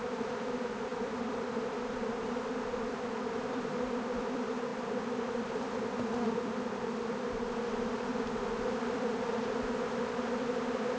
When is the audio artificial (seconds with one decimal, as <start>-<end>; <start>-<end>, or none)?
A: 0.0-4.7; 5.5-8.1; 8.8-9.3; 10.0-11.0